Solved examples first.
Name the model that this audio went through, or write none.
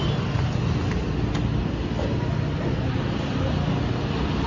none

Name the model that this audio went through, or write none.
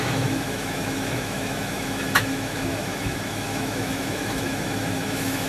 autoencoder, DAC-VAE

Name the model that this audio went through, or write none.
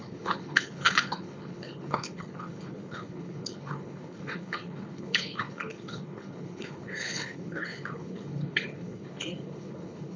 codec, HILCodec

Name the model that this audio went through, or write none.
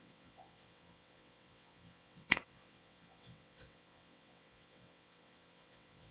vocoder, WaveNeXt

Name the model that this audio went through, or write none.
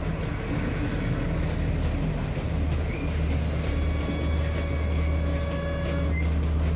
none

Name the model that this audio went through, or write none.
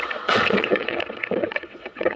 vocoder, WaveNeXt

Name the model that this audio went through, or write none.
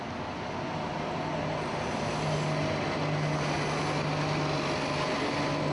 none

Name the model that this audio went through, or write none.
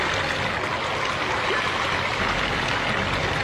none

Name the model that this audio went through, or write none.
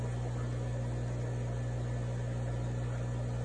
none